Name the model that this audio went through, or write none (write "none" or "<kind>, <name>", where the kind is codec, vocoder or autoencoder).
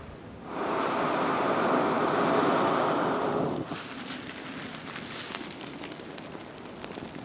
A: none